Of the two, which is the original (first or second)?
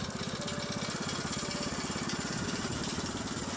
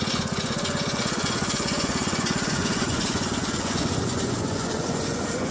first